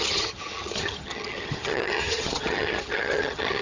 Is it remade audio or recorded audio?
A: remade